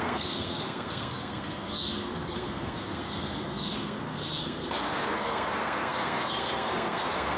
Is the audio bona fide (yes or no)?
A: no